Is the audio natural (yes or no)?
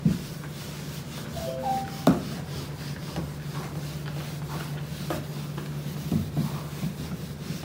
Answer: yes